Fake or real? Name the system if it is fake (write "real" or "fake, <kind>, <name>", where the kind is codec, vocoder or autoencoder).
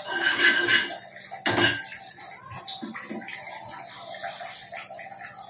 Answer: real